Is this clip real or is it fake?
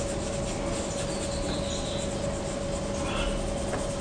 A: real